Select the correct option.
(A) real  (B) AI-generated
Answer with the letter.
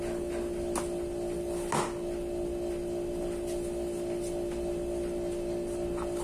A